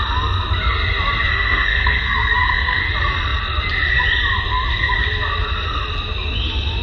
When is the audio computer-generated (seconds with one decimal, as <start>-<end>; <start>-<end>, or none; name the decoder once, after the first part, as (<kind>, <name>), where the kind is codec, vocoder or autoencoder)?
1.3-2.8 (codec, SNAC)